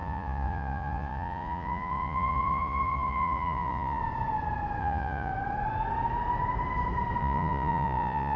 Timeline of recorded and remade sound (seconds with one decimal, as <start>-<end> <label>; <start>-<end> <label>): 0.0-4.0 remade; 4.0-4.8 recorded; 4.8-5.3 remade; 5.3-7.2 recorded; 7.2-8.4 remade